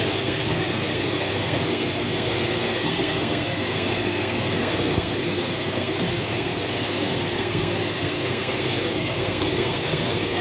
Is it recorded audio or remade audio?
remade